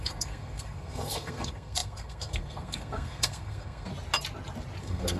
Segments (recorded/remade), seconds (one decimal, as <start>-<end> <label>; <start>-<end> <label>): 0.0-3.9 remade; 3.9-4.8 recorded; 4.8-5.2 remade